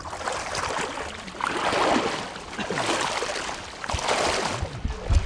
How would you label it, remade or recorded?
recorded